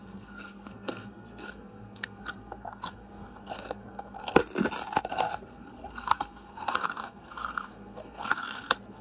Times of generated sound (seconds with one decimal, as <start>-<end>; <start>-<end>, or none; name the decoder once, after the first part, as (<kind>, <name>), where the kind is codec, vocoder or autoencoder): 0.0-4.4 (codec, SNAC); 5.0-9.0